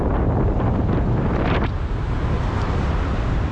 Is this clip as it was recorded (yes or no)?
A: yes